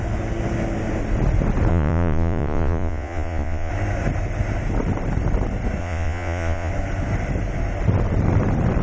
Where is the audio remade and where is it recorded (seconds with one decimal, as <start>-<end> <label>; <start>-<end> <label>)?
0.0-1.7 recorded; 1.7-3.7 remade; 3.7-5.8 recorded; 5.8-6.7 remade; 6.7-8.8 recorded